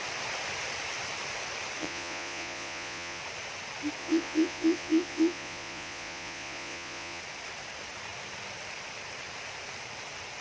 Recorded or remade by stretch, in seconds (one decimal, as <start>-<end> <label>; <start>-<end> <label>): 0.0-1.8 recorded; 1.8-3.2 remade; 3.2-4.0 recorded; 4.0-7.2 remade; 7.2-10.4 recorded